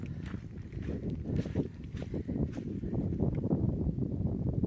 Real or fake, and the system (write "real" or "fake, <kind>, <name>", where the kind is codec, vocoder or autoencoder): real